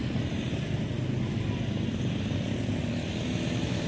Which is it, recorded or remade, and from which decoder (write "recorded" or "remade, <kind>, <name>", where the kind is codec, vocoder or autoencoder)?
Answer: recorded